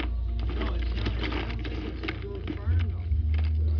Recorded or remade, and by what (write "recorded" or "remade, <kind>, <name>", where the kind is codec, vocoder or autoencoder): recorded